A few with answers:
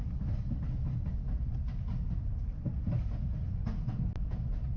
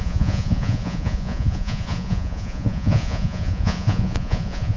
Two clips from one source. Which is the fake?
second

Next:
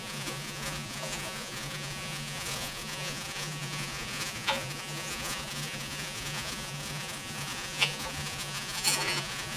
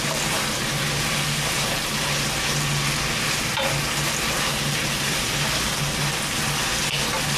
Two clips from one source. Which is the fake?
first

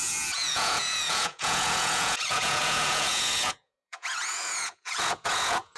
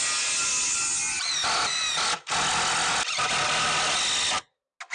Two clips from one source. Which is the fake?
first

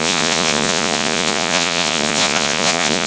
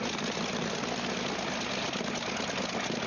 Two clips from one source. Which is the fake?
first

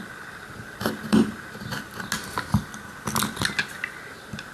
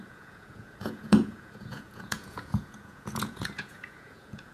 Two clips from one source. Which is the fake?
second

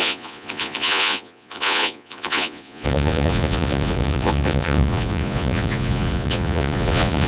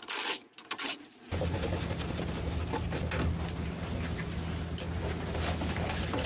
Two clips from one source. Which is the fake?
first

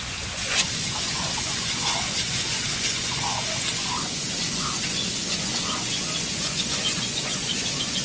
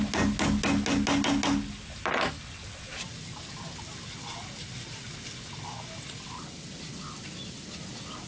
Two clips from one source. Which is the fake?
first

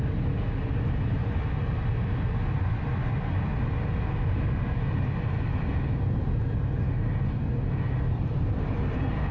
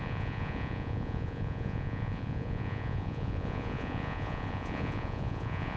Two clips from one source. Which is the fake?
second